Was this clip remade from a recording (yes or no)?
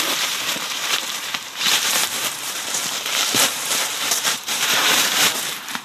yes